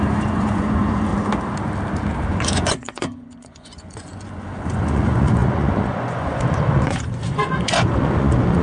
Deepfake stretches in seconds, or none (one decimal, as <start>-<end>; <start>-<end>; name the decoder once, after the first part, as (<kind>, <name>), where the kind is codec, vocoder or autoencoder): 0.0-1.1 (vocoder, Vocos); 2.3-8.6